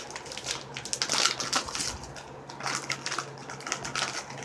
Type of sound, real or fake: real